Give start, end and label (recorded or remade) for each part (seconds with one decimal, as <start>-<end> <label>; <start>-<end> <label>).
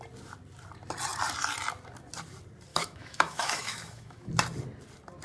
0.0-2.7 recorded; 2.7-4.3 remade; 4.3-5.2 recorded